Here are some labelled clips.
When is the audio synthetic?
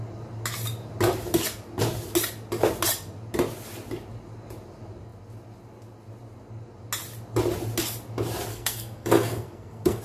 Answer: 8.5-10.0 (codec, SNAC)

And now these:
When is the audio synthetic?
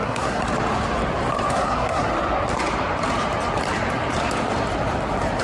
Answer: 0.0-0.4 (codec, SNAC); 1.5-2.1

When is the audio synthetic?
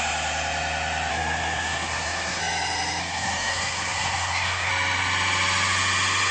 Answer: 1.1-2.4 (codec, SNAC); 3.0-4.7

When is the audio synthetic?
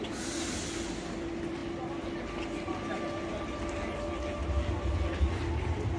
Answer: none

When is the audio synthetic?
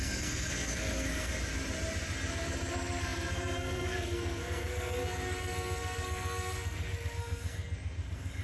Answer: 0.0-1.3 (codec, SNAC); 2.3-8.4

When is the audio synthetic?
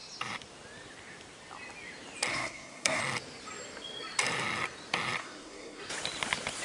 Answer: 2.3-3.0 (codec, SNAC); 5.2-5.8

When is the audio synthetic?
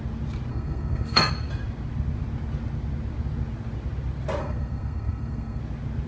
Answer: 0.5-1.3 (codec, SNAC); 4.4-5.6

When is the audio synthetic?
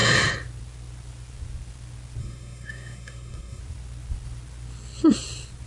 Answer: 2.2-3.6 (codec, SNAC)